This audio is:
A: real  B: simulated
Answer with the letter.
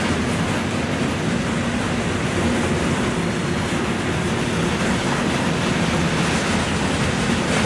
A